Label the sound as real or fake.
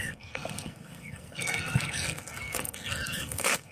fake